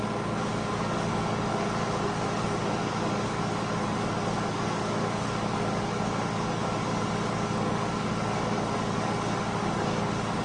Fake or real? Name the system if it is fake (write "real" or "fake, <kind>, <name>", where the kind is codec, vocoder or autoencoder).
fake, codec, DAC